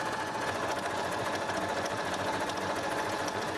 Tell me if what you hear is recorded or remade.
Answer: remade